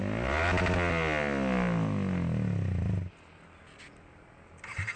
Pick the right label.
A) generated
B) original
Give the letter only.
B